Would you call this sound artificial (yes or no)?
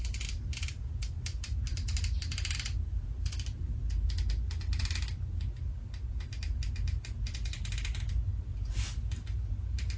no